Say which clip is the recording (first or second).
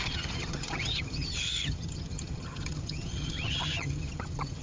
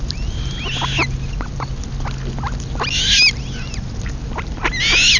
second